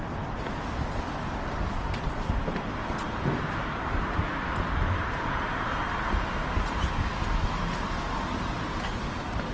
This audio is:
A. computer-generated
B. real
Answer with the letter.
B